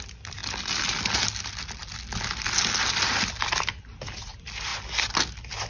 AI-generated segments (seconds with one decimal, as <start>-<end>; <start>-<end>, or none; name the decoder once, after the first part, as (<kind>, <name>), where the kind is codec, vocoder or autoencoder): none